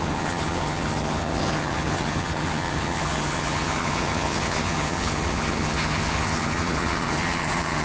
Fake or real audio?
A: fake